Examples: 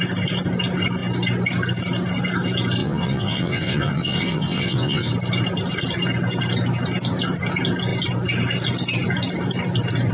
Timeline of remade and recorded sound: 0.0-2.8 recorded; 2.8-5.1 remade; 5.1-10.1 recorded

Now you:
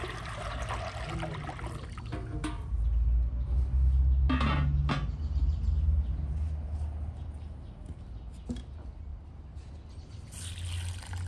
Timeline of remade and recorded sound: 0.0-11.3 recorded

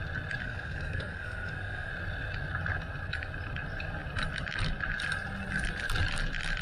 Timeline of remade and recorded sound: 0.0-0.4 recorded; 0.4-1.9 remade; 1.9-6.6 recorded

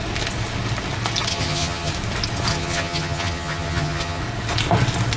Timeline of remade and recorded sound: 0.0-1.3 recorded; 1.3-1.9 remade; 1.9-2.5 recorded; 2.5-4.2 remade; 4.2-5.2 recorded